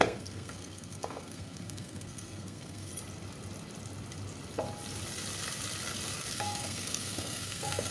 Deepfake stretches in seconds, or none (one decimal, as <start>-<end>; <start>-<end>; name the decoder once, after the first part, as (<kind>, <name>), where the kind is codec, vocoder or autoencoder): 0.0-2.9 (codec, SNAC); 6.3-7.9